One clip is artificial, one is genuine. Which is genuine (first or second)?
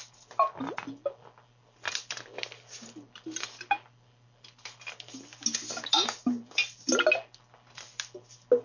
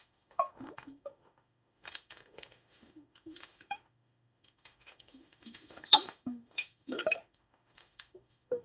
first